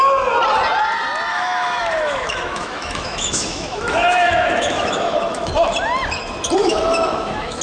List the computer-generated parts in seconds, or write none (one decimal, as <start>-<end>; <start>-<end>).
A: 1.3-5.5; 6.6-7.6